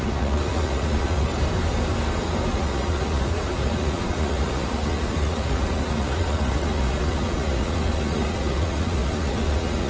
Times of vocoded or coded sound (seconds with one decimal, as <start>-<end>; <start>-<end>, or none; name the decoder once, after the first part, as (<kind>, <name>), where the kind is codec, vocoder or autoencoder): 0.0-1.3 (vocoder, Vocos); 2.5-9.9